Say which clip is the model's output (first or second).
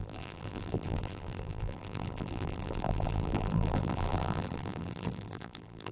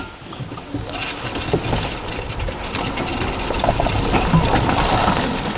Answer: first